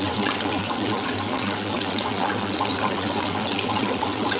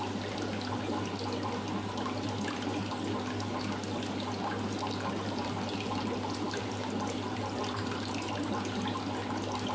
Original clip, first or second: second